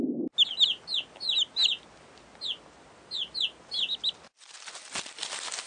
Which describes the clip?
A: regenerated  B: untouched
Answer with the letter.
B